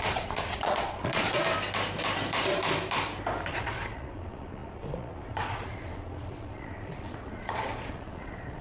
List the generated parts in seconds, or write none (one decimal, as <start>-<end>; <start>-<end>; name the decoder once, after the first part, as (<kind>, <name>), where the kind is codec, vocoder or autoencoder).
0.0-1.4 (vocoder, Vocos); 3.5-8.6

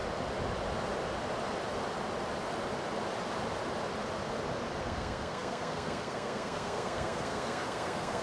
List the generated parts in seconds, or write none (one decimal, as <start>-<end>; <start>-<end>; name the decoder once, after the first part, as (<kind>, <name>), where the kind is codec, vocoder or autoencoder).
4.8-8.2 (codec, SNAC)

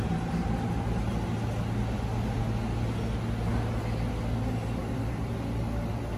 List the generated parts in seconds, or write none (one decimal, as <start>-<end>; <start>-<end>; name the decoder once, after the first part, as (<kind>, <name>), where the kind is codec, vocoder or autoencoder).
4.8-6.2 (vocoder, BigVGAN v2)

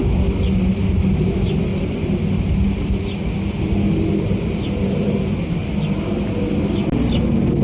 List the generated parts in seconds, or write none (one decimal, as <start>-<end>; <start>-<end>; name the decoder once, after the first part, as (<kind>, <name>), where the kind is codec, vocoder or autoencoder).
1.0-1.7 (vocoder, BigVGAN v2); 4.2-5.6

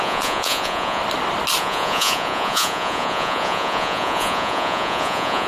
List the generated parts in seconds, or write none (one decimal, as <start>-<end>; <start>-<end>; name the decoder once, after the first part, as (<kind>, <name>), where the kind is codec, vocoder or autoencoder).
0.0-1.0 (vocoder, Vocos); 1.6-5.5

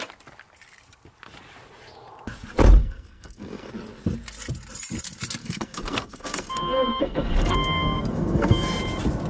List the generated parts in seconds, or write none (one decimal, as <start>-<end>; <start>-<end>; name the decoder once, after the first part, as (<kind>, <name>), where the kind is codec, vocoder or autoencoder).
2.8-3.7 (codec, SNAC); 5.4-8.8

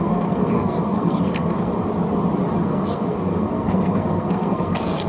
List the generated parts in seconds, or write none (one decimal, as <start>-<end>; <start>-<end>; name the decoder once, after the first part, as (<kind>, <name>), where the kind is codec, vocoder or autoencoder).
0.0-1.7 (codec, SNAC); 2.6-5.1

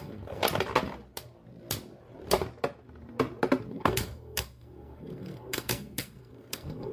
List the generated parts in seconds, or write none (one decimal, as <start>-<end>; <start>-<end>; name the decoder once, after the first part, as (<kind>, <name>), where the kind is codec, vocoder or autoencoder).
0.0-0.4 (codec, SNAC); 3.7-6.9